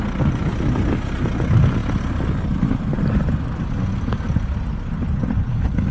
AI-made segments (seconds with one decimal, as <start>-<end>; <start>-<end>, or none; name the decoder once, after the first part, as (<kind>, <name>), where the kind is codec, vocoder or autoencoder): none